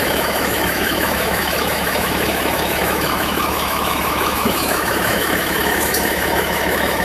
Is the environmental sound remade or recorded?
remade